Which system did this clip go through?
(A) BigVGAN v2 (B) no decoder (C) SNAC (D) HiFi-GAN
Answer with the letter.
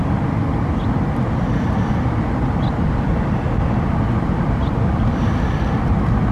B